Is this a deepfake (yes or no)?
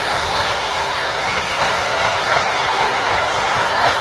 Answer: yes